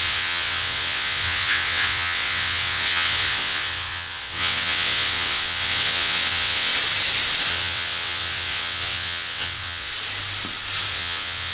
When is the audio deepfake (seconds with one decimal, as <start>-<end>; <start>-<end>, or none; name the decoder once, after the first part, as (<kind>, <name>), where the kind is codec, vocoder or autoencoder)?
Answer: 0.0-6.7 (vocoder, WaveNeXt); 7.5-9.9; 10.9-11.5